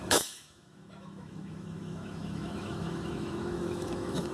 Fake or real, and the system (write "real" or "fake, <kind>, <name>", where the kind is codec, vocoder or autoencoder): fake, autoencoder, DAC-VAE